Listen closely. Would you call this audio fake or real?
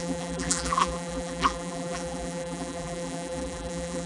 fake